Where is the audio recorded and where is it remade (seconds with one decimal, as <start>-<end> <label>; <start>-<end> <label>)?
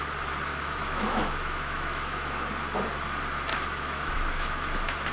0.0-0.5 recorded; 0.5-2.3 remade; 2.3-3.5 recorded; 3.5-5.1 remade